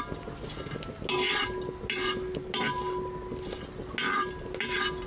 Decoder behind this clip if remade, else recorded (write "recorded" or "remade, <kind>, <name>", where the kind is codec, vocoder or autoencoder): recorded